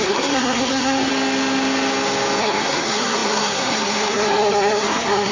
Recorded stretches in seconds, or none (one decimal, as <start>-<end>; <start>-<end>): 1.1-2.4